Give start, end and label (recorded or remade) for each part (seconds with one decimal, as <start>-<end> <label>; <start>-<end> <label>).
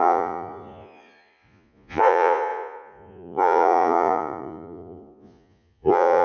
0.0-6.2 remade